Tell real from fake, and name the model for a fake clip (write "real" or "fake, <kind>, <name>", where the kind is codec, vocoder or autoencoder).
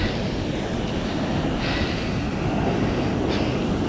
real